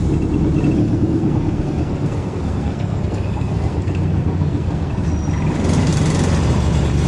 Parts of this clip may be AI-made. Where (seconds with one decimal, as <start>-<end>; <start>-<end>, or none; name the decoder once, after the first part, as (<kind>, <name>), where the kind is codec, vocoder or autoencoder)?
0.8-5.1 (codec, SNAC)